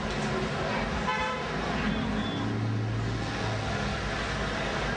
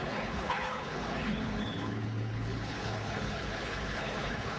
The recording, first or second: first